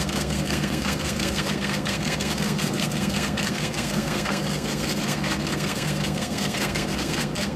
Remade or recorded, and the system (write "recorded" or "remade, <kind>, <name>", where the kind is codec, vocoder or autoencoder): remade, codec, SNAC